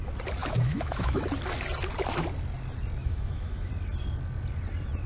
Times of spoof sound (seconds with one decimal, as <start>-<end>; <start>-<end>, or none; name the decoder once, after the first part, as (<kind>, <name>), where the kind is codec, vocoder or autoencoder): 0.4-1.2 (autoencoder, DAC-VAE); 3.0-3.7